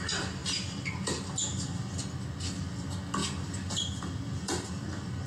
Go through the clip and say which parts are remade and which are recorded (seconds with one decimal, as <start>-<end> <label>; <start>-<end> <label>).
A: 0.0-3.2 recorded; 3.2-4.7 remade; 4.7-5.3 recorded